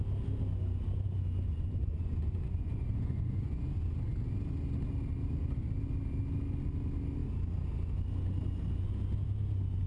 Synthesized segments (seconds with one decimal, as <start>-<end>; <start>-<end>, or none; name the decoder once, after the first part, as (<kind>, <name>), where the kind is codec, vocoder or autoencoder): 1.5-3.7 (vocoder, Vocos)